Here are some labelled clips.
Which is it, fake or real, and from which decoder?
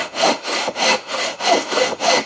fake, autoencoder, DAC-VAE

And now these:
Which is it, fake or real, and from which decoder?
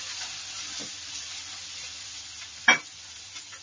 real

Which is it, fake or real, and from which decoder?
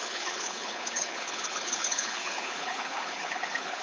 fake, codec, HILCodec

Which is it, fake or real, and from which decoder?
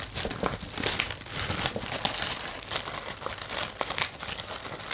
real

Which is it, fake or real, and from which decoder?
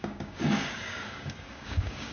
fake, codec, DAC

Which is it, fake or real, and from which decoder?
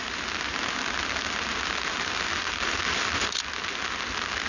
real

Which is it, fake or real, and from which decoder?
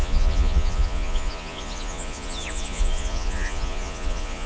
fake, vocoder, Vocos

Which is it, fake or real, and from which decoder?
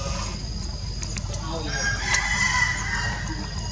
real